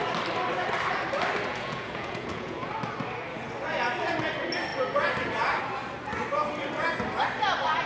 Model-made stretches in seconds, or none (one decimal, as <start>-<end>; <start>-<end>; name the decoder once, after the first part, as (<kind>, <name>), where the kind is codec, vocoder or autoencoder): 1.5-2.7 (vocoder, Vocos)